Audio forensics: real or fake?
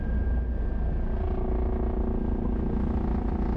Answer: real